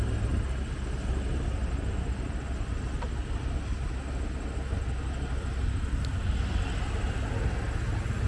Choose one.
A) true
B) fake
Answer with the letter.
A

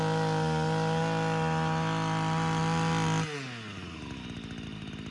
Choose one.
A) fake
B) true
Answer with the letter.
B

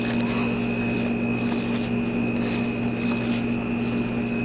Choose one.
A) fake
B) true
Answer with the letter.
B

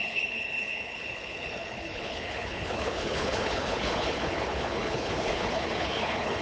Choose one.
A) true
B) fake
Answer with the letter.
B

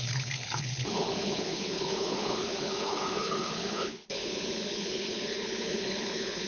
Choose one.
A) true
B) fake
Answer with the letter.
B